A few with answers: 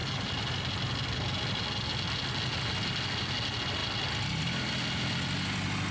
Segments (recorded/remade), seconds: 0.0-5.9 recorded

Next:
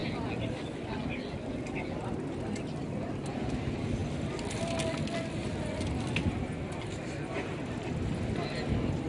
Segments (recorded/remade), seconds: 0.0-9.1 recorded

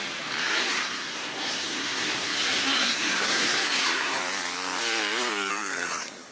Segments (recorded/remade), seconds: 0.0-0.4 recorded; 0.4-4.2 remade; 4.2-5.5 recorded; 5.5-6.3 remade

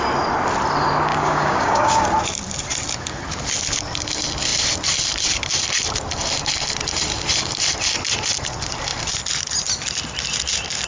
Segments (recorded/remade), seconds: 0.0-1.1 recorded; 1.1-2.0 remade; 2.0-10.9 recorded

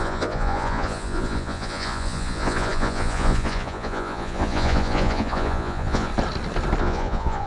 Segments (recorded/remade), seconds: 0.0-6.1 remade; 6.1-6.8 recorded; 6.8-7.5 remade

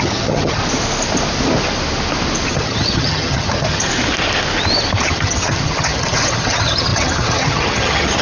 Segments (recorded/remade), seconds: 0.0-0.6 remade; 0.6-2.5 recorded; 2.5-3.9 remade; 3.9-5.0 recorded; 5.0-8.2 remade